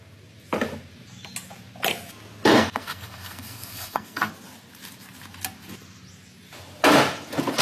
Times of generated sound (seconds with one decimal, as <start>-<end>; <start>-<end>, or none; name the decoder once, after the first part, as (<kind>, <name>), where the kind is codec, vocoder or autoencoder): 2.5-4.3 (codec, SNAC)